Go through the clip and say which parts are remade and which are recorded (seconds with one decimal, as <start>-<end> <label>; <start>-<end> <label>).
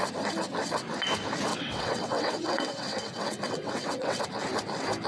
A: 0.0-1.5 recorded; 1.5-4.2 remade; 4.2-5.1 recorded